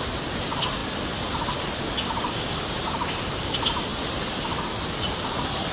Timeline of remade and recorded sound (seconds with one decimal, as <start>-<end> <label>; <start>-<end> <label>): 0.0-5.7 recorded